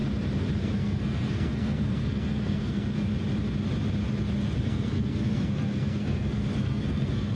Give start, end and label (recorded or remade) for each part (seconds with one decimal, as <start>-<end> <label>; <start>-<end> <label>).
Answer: 0.0-0.6 recorded; 0.6-3.1 remade; 3.1-4.6 recorded; 4.6-7.4 remade